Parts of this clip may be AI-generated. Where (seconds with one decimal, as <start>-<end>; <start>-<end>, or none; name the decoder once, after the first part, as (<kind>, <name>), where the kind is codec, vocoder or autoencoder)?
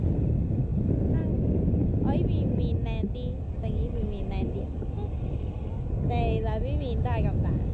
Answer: none